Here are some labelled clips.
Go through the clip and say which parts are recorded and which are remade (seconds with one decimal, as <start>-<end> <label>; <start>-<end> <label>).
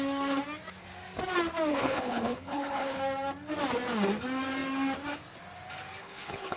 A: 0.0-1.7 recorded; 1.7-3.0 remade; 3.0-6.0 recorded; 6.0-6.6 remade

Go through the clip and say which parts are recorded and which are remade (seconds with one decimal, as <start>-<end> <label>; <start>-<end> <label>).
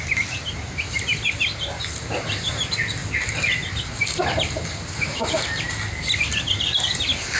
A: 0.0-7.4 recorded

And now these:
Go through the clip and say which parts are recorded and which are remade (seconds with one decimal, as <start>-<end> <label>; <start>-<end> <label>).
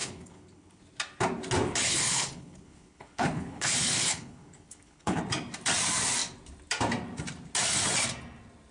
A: 0.0-0.8 remade; 0.8-1.8 recorded; 1.8-5.2 remade; 5.2-8.7 recorded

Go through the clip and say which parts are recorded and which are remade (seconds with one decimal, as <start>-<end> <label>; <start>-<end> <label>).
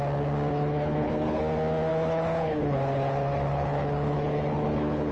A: 0.0-0.5 recorded; 0.5-1.4 remade; 1.4-1.9 recorded; 1.9-5.1 remade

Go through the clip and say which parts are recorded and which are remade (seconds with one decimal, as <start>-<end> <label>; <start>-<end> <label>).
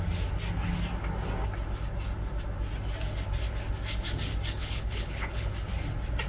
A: 0.0-4.6 recorded; 4.6-5.5 remade; 5.5-6.3 recorded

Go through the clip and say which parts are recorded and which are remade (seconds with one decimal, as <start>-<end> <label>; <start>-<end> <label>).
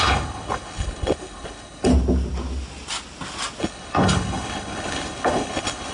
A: 0.0-1.9 remade; 1.9-3.6 recorded; 3.6-5.9 remade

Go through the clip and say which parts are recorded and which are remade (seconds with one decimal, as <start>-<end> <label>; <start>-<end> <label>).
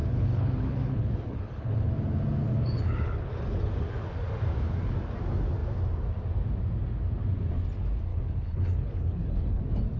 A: 0.0-1.9 remade; 1.9-2.5 recorded; 2.5-3.7 remade; 3.7-8.1 recorded; 8.1-9.6 remade; 9.6-10.0 recorded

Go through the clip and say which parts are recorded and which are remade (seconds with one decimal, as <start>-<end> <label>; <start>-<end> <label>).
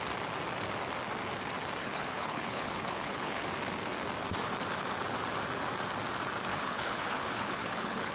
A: 0.0-1.8 recorded; 1.8-3.4 remade; 3.4-6.5 recorded; 6.5-8.1 remade